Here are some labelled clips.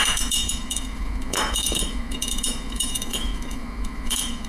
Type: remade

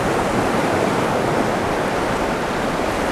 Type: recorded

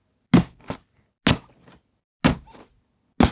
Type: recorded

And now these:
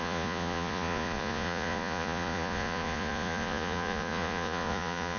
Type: remade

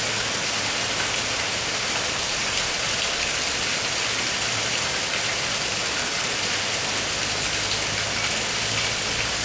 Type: recorded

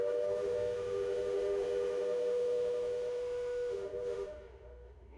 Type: remade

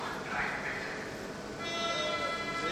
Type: recorded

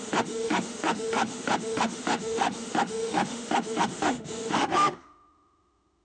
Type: remade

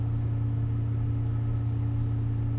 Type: recorded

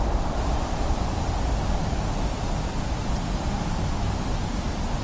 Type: recorded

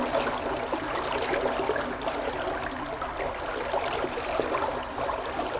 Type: recorded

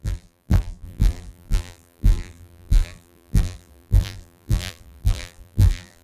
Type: remade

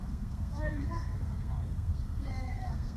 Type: remade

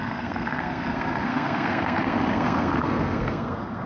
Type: remade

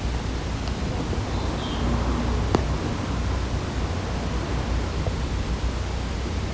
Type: recorded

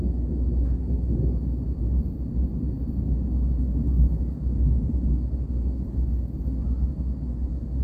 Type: recorded